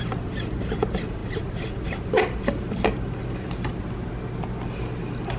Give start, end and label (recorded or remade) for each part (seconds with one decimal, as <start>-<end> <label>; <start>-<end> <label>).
0.0-5.4 recorded